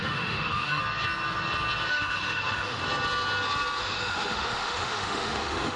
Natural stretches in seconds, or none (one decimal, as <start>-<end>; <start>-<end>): 0.8-1.9; 2.8-3.8